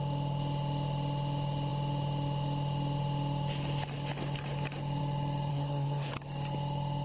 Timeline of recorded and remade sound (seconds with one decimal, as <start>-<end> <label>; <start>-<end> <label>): 0.0-5.5 recorded; 5.5-6.1 remade; 6.1-7.0 recorded